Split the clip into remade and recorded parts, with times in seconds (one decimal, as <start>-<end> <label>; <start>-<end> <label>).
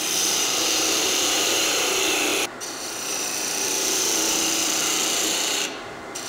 0.0-6.3 remade